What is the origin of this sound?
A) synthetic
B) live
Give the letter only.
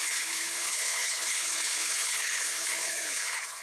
A